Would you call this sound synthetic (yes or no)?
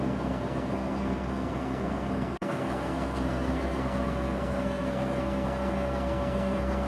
yes